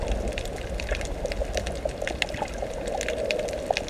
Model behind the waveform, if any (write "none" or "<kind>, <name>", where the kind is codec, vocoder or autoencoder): none